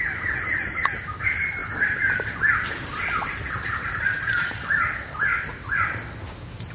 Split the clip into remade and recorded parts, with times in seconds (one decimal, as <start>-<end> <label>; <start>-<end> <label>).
0.0-6.7 recorded